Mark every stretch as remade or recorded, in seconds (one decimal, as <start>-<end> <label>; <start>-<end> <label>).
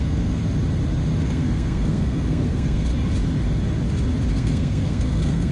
0.0-0.4 remade; 0.4-1.2 recorded; 1.2-2.9 remade; 2.9-4.3 recorded; 4.3-5.5 remade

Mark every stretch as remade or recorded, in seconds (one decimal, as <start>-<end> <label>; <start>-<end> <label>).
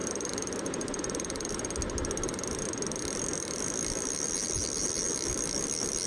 0.0-1.5 remade; 1.5-3.3 recorded; 3.3-5.0 remade; 5.0-6.1 recorded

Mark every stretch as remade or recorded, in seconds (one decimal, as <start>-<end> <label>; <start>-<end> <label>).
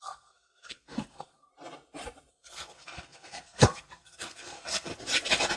0.0-1.5 remade; 1.5-2.3 recorded; 2.3-4.9 remade; 4.9-5.6 recorded